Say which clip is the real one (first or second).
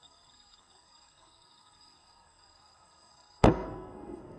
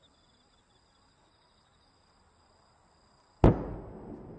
second